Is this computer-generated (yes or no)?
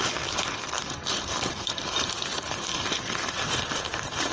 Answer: yes